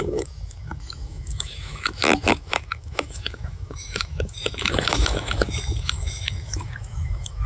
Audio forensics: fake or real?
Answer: fake